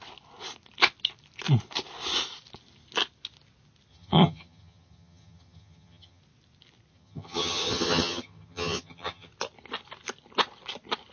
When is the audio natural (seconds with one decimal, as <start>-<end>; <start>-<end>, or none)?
0.0-3.9; 6.2-6.9; 9.3-11.1